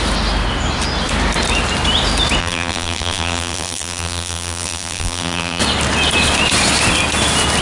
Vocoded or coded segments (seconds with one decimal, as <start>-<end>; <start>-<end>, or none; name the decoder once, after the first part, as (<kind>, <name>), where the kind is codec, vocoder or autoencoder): 2.4-5.6 (vocoder, BigVGAN v2)